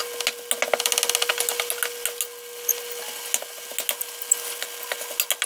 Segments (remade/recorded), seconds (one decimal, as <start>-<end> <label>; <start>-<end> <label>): 0.0-5.5 recorded